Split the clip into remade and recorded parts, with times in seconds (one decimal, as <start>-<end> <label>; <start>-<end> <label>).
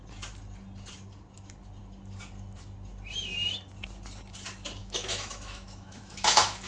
0.0-4.8 recorded; 4.8-6.7 remade